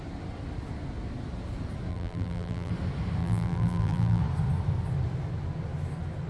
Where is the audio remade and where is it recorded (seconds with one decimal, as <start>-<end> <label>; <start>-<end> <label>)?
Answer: 0.0-1.9 recorded; 1.9-2.7 remade; 2.7-3.2 recorded; 3.2-4.2 remade; 4.2-6.3 recorded